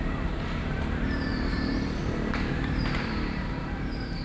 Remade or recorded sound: remade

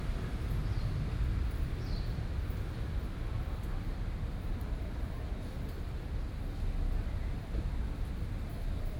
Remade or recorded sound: recorded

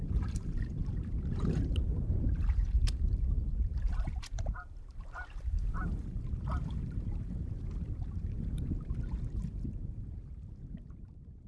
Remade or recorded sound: remade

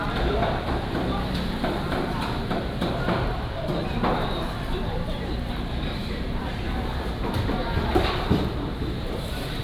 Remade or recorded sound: remade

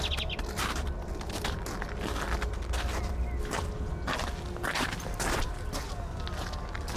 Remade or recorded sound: recorded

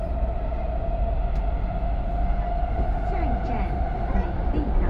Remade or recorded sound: recorded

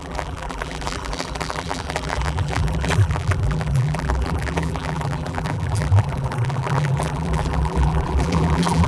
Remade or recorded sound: remade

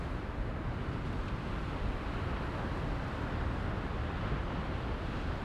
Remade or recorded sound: recorded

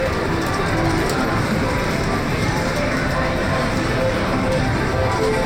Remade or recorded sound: remade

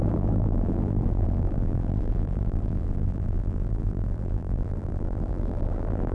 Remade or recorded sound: remade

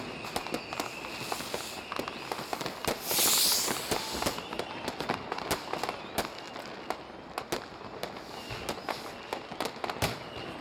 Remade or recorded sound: recorded